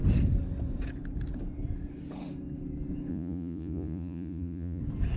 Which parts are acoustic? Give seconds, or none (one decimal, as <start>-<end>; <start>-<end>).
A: 0.0-3.1; 4.8-5.2